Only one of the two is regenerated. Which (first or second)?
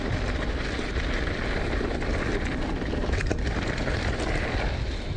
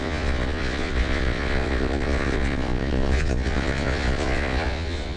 second